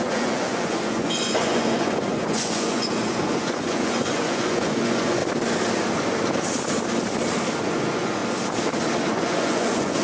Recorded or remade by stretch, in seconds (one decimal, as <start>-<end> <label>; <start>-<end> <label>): 0.0-5.2 remade; 5.2-7.6 recorded; 7.6-8.2 remade; 8.2-9.1 recorded; 9.1-10.0 remade